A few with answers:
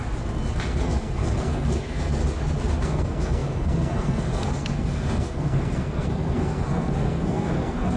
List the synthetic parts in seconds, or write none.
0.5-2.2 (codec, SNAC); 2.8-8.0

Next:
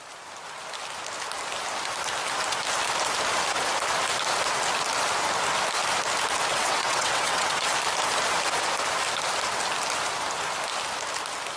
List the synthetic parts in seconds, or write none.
6.5-7.7 (vocoder, WaveNeXt)

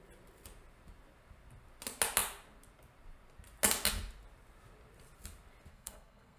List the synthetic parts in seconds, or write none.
5.7-6.4 (codec, SNAC)